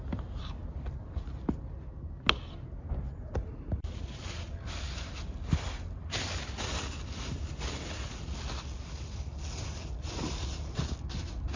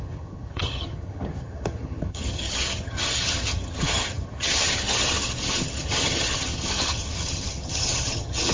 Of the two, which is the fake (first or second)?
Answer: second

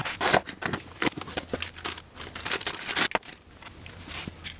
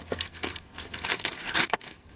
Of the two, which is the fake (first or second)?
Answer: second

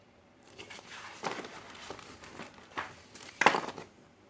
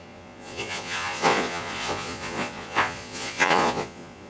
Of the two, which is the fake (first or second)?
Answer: second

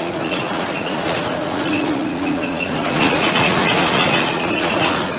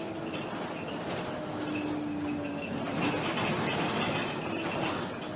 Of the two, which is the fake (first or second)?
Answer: first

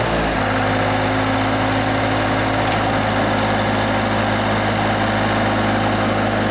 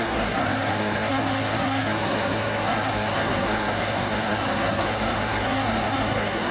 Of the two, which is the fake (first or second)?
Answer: second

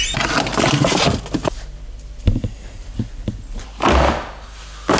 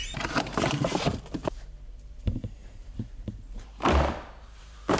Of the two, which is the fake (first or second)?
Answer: second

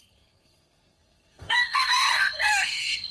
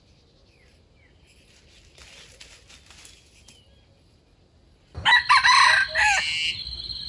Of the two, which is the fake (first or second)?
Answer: first